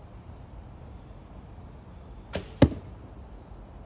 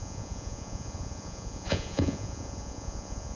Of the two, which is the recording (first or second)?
first